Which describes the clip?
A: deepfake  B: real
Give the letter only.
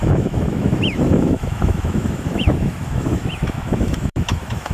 A